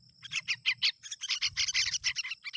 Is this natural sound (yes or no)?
yes